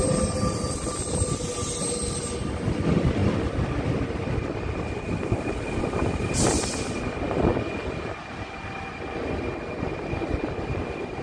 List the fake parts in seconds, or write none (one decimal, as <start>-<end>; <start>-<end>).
none